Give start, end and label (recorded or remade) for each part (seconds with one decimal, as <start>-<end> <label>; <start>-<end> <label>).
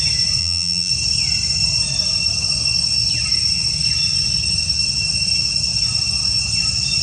0.0-0.4 recorded; 0.4-0.9 remade; 0.9-7.0 recorded